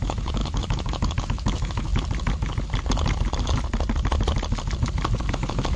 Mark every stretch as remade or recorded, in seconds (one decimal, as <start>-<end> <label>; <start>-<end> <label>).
0.0-1.9 remade; 1.9-5.3 recorded; 5.3-5.8 remade